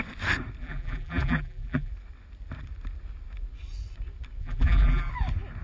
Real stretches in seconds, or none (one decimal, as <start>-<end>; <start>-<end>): 0.0-0.6; 1.9-4.4; 5.1-5.6